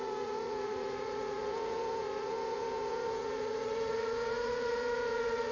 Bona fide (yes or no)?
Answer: no